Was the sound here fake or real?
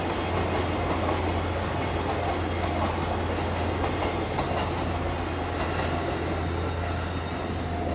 real